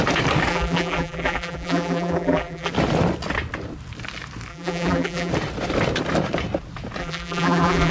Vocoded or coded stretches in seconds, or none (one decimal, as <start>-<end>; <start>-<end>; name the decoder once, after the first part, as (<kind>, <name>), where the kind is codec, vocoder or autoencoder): 0.5-2.7 (vocoder, BigVGAN v2); 4.5-5.3; 7.0-7.9

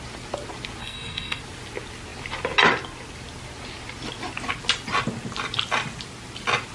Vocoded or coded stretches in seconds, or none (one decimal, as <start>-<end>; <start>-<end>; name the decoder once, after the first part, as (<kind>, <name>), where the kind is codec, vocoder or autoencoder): 0.8-1.4 (codec, SNAC)

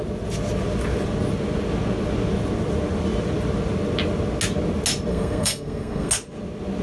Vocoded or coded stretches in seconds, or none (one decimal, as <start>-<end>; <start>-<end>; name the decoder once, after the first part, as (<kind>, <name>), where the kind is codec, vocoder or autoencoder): 5.1-6.1 (codec, SNAC)